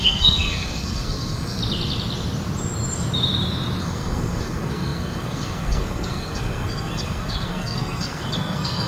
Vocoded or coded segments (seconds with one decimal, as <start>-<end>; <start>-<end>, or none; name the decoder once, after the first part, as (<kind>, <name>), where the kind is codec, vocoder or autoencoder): 0.0-1.6 (codec, SNAC); 3.8-8.9